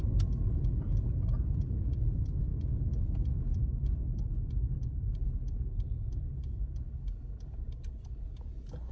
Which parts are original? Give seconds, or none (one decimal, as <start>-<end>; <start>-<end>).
0.0-8.9